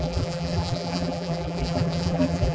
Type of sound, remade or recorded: remade